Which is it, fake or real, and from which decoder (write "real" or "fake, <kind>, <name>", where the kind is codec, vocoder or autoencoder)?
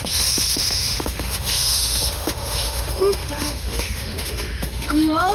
fake, autoencoder, DAC-VAE